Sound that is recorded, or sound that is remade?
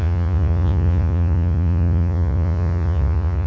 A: remade